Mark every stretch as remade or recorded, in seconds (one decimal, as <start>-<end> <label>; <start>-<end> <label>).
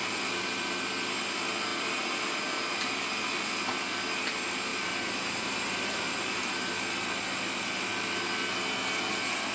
0.0-1.7 recorded; 1.7-3.3 remade; 3.3-4.7 recorded; 4.7-6.7 remade; 6.7-9.5 recorded